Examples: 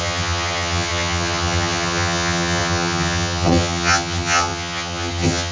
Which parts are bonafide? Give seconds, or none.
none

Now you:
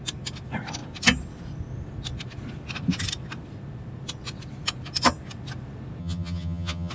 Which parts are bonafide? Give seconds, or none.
0.0-6.0

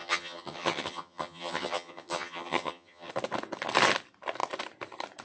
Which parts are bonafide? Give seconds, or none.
3.1-5.2